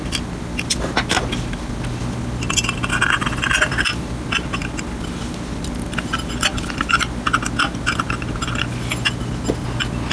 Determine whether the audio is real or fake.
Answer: real